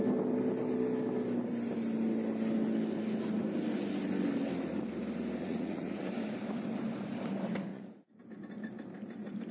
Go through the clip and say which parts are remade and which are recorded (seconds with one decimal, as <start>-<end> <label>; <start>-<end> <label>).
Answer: 0.0-5.4 recorded; 5.4-6.1 remade; 6.1-7.7 recorded; 7.7-8.2 remade; 8.2-9.5 recorded